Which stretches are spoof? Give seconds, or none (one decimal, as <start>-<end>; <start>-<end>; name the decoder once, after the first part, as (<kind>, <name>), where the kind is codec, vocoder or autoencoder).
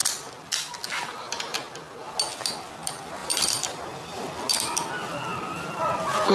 3.2-4.3 (vocoder, BigVGAN v2)